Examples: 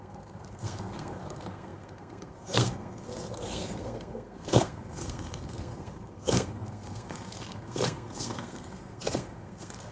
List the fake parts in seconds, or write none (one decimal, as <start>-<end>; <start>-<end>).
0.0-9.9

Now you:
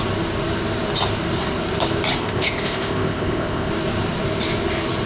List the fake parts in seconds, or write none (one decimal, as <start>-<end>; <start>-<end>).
2.2-3.7

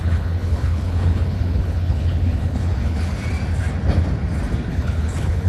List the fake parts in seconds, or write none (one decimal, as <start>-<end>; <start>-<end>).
0.0-3.1; 4.7-5.5

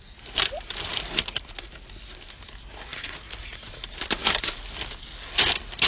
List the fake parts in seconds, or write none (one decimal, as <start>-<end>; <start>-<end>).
2.9-3.7

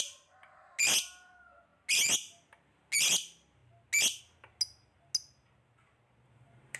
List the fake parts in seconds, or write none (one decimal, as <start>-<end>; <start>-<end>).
none

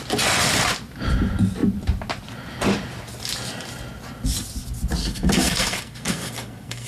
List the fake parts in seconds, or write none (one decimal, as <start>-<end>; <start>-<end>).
5.0-6.9

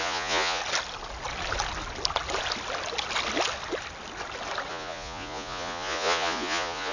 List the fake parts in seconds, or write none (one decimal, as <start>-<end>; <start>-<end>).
0.0-0.6; 4.7-6.9